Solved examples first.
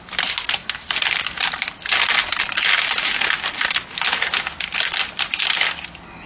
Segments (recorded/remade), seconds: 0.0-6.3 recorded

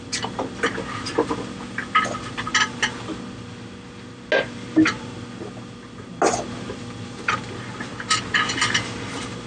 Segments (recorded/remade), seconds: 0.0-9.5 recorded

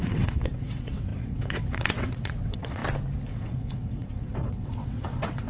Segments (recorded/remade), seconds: 0.0-2.8 remade; 2.8-3.3 recorded; 3.3-5.5 remade